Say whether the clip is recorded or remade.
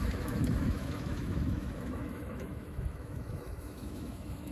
remade